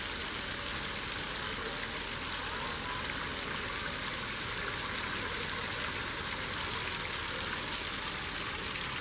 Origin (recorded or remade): recorded